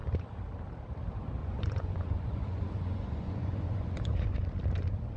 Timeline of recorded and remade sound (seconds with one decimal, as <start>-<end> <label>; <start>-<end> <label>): 0.0-1.4 recorded; 1.4-4.5 remade; 4.5-5.2 recorded